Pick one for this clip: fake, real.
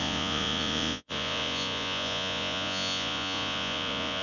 fake